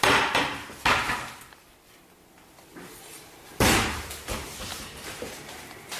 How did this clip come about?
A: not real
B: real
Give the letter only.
B